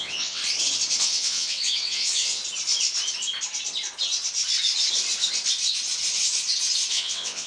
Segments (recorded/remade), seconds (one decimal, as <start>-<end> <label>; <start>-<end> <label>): 0.0-0.4 remade; 0.4-1.0 recorded; 1.0-2.4 remade; 2.4-6.9 recorded; 6.9-7.5 remade